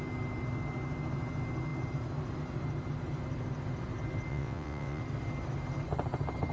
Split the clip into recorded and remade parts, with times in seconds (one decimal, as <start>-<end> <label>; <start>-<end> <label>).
0.0-4.3 recorded; 4.3-5.0 remade; 5.0-6.5 recorded